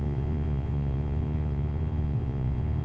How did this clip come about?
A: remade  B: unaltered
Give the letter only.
A